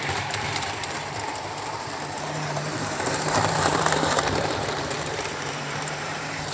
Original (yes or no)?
no